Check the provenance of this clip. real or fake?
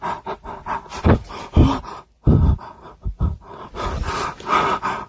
real